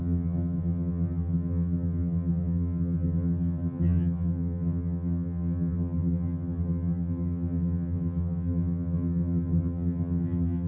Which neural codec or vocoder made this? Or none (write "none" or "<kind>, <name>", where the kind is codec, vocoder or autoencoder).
vocoder, HiFi-GAN